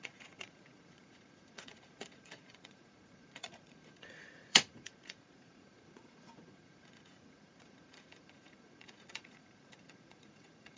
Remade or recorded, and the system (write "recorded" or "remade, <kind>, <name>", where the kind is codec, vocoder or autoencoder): remade, vocoder, Vocos